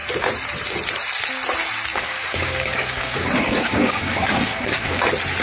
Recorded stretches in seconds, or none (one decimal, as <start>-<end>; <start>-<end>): 0.0-1.9; 5.0-5.4